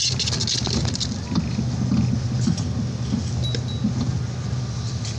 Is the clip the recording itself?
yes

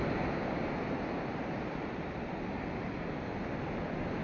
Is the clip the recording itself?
yes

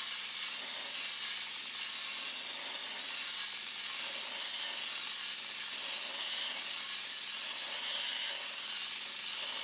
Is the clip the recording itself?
yes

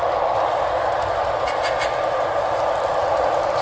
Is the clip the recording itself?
yes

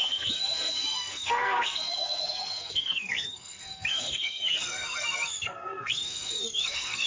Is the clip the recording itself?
no